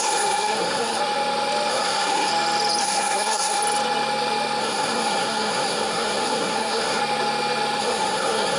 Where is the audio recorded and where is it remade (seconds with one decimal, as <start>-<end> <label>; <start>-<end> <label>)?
0.0-1.0 remade; 1.0-1.7 recorded; 1.7-2.3 remade; 2.3-2.8 recorded; 2.8-3.6 remade; 3.6-4.6 recorded; 4.6-7.0 remade; 7.0-7.8 recorded; 7.8-8.6 remade